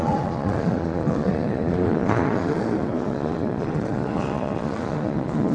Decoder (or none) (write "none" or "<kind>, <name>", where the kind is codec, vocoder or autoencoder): vocoder, Vocos